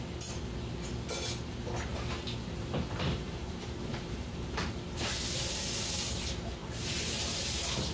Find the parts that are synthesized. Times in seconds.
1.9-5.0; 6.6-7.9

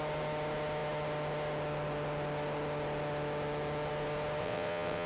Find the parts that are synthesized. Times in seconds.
4.4-5.1

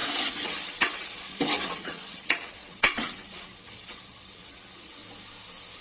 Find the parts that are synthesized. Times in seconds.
0.0-5.0

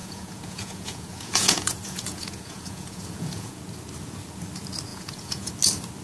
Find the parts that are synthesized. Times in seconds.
0.0-3.6; 4.9-5.5

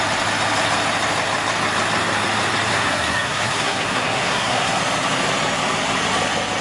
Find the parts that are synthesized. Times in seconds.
2.7-4.8

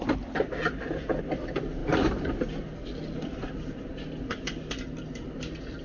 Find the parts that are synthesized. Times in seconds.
none

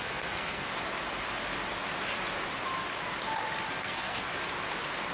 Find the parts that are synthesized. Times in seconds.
0.0-0.7; 3.8-4.3